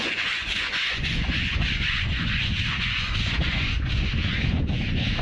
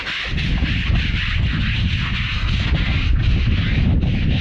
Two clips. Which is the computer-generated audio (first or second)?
first